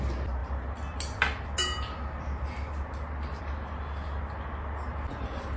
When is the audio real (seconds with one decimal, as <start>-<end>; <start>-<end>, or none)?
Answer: 0.0-5.6